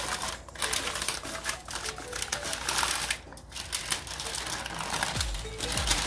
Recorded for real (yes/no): yes